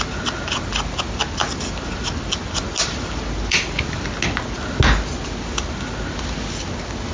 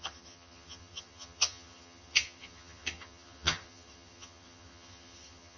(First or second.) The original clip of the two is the first